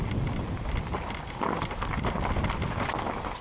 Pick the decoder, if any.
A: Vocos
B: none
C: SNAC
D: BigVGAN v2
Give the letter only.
B